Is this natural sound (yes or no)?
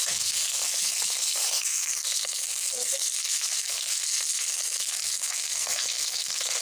no